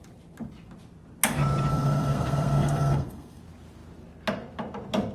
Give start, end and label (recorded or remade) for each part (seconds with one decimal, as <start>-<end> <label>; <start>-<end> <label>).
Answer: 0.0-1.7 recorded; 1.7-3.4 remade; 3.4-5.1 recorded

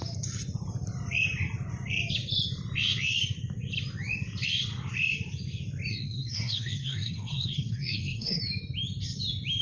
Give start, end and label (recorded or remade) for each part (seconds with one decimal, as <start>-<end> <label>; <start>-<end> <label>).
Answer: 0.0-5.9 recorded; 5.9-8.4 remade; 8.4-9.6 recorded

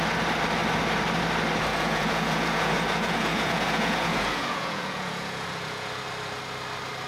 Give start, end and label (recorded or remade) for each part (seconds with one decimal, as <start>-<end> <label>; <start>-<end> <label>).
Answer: 0.0-1.7 recorded; 1.7-6.0 remade; 6.0-7.1 recorded